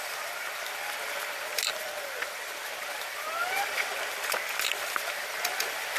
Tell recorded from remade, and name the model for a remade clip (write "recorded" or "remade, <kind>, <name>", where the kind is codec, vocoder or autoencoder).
recorded